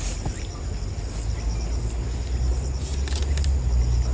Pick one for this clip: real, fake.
real